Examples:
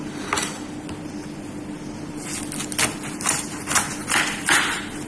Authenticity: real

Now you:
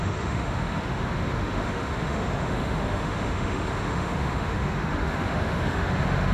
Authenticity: fake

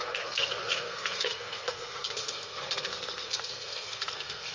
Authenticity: fake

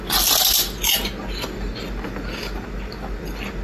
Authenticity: real